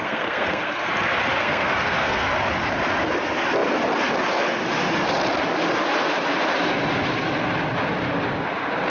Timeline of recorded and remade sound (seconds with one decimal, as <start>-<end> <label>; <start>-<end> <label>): 0.0-0.9 remade; 0.9-1.4 recorded; 1.4-2.3 remade; 2.3-8.9 recorded